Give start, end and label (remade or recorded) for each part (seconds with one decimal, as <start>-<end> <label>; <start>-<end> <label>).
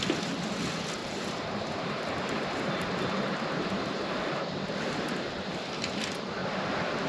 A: 0.0-1.0 recorded; 1.0-5.3 remade; 5.3-7.1 recorded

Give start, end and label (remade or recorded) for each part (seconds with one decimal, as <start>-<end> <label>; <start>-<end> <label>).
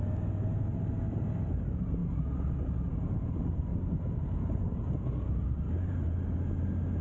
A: 0.0-3.7 recorded; 3.7-4.9 remade; 4.9-7.0 recorded